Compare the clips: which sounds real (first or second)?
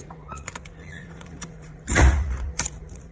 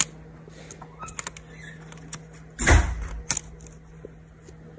second